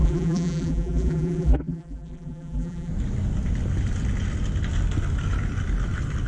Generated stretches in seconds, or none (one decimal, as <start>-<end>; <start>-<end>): 0.0-2.9